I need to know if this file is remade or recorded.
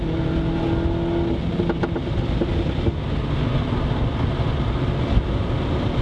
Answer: recorded